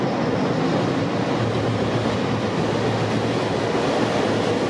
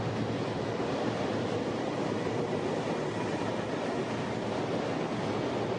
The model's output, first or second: second